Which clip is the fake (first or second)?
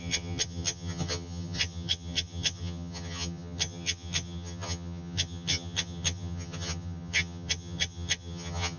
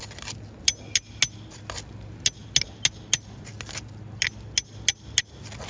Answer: first